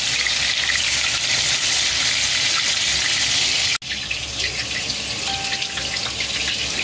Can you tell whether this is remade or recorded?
recorded